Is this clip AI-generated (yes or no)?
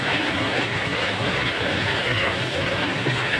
yes